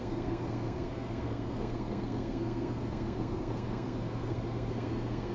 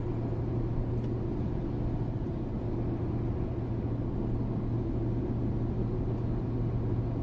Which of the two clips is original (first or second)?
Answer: second